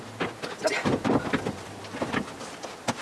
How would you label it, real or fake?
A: real